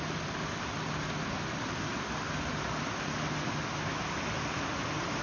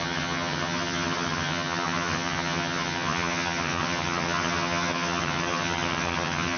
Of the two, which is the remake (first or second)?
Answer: second